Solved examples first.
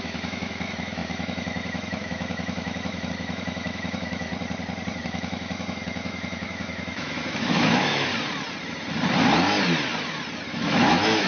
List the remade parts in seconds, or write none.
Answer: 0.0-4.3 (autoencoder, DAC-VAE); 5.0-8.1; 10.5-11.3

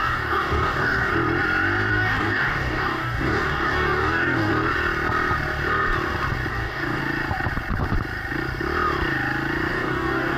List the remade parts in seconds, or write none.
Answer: 0.0-1.1 (codec, DAC); 1.9-4.5; 6.5-7.0; 9.7-10.4

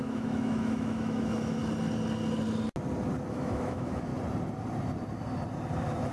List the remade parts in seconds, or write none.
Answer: 0.0-1.6 (autoencoder, DAC-VAE); 3.3-4.1

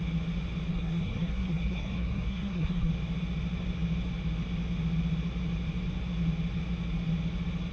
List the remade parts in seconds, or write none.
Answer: 0.7-2.9 (codec, SNAC)

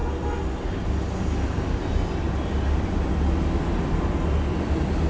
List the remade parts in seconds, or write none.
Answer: none